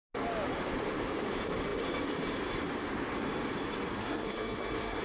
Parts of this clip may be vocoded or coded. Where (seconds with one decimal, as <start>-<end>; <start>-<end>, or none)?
4.0-5.0